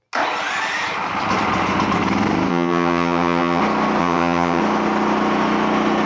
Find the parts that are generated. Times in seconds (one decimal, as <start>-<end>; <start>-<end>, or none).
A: 2.5-3.6; 4.0-4.6